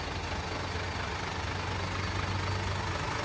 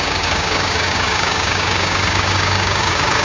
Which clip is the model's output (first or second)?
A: second